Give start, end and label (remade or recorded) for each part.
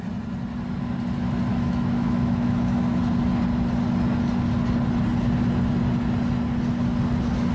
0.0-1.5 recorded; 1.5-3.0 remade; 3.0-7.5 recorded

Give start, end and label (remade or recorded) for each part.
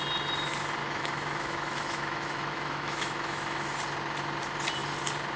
0.0-0.8 recorded; 0.8-3.7 remade; 3.7-5.4 recorded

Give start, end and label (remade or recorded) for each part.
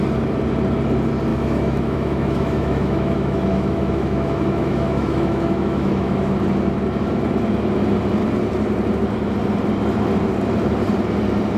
0.0-1.3 recorded; 1.3-6.3 remade; 6.3-11.6 recorded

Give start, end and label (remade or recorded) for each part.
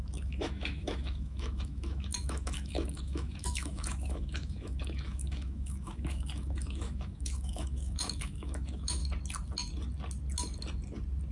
0.0-9.0 remade; 9.0-11.3 recorded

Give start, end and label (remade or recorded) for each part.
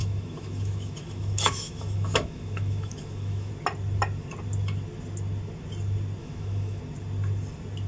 0.0-3.5 remade; 3.5-6.2 recorded; 6.2-6.8 remade; 6.8-7.9 recorded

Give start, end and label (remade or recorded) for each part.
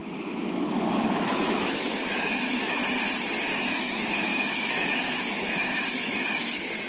0.0-2.8 remade; 2.8-3.6 recorded; 3.6-6.9 remade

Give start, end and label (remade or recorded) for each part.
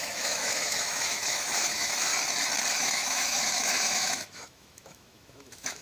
0.0-2.1 remade; 2.1-2.7 recorded; 2.7-5.8 remade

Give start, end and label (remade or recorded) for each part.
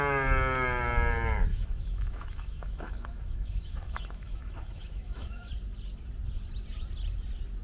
0.0-1.5 recorded; 1.5-5.5 remade; 5.5-7.6 recorded